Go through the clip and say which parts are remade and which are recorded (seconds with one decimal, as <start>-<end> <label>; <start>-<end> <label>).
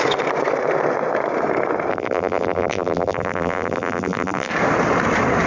0.0-1.9 recorded; 1.9-4.5 remade; 4.5-5.5 recorded